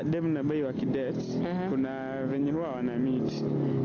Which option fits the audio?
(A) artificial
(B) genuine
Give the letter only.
B